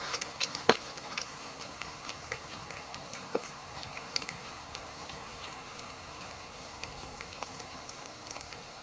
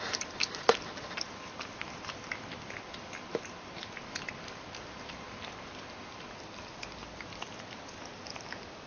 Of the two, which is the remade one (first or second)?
first